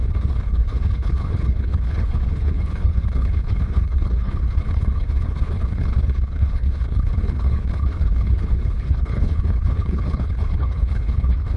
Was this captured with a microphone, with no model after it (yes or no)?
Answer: no